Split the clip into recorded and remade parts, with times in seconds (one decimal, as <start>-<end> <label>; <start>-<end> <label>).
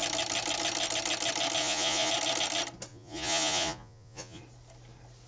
0.0-1.6 recorded; 1.6-2.1 remade; 2.1-2.9 recorded; 2.9-4.4 remade; 4.4-5.3 recorded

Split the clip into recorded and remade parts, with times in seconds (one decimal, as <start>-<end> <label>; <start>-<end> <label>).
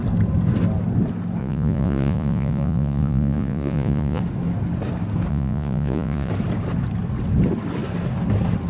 0.0-1.4 recorded; 1.4-4.2 remade; 4.2-5.3 recorded; 5.3-6.3 remade; 6.3-8.7 recorded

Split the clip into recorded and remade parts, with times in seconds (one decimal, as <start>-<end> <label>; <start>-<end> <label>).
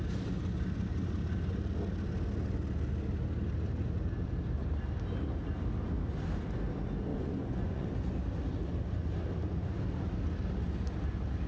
0.0-7.1 recorded; 7.1-7.9 remade; 7.9-11.5 recorded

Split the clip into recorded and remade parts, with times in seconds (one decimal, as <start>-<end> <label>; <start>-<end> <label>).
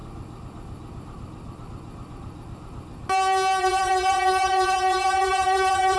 0.0-3.6 recorded; 3.6-6.0 remade